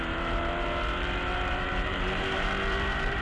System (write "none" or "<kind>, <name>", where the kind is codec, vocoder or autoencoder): vocoder, BigVGAN v2